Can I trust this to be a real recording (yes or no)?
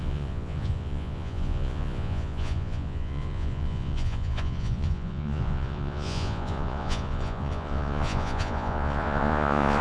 no